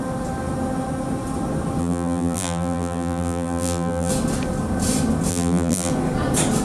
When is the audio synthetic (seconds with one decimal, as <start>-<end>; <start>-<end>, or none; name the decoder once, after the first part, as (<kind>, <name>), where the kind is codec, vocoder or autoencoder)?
1.8-4.1 (vocoder, BigVGAN v2); 5.3-5.9